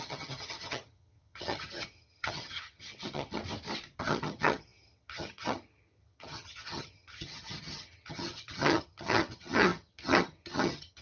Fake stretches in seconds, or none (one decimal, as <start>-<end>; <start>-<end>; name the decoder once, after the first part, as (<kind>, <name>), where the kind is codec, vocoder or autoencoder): 0.0-3.4 (vocoder, HiFi-GAN); 4.0-11.0